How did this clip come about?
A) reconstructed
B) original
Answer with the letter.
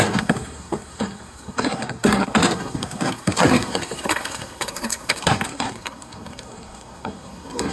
A